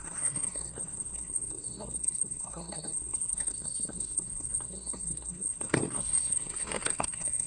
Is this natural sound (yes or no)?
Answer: no